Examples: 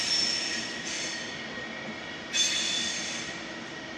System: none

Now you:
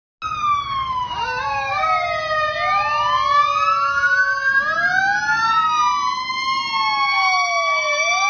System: none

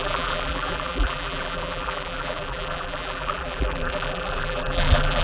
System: vocoder, BigVGAN v2